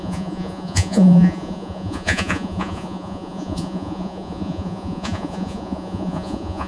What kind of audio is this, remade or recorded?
remade